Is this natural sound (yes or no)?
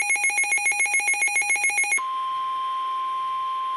yes